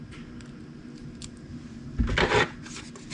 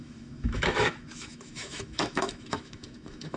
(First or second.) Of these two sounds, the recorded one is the first